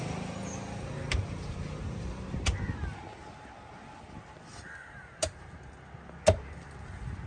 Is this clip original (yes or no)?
yes